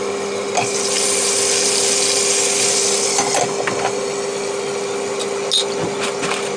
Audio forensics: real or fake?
real